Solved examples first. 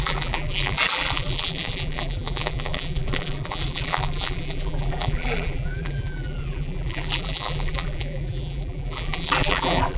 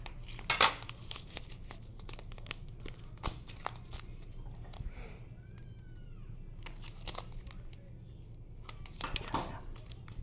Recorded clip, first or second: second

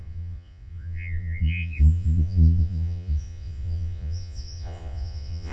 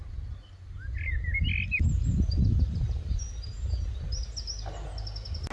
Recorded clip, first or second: second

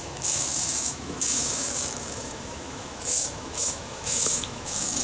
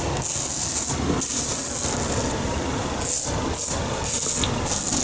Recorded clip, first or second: second